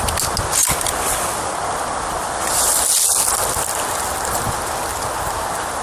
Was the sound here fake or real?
real